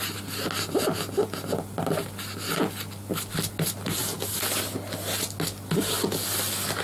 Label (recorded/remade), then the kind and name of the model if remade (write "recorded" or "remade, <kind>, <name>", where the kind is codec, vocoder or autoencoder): recorded